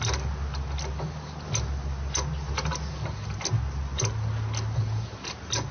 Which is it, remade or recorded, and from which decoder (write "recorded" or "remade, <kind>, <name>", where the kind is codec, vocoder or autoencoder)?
recorded